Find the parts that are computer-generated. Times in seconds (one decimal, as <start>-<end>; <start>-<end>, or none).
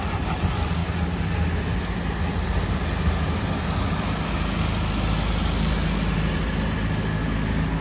none